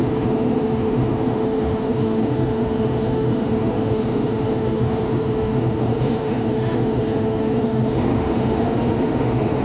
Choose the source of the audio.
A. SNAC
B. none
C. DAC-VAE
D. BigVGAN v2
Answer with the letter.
C